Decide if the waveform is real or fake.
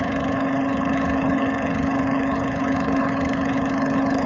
fake